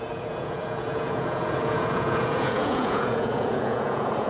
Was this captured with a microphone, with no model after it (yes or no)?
no